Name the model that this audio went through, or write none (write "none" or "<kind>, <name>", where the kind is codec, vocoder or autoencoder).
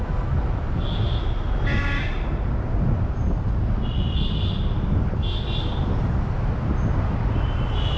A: none